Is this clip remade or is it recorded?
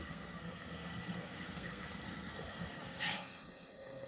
remade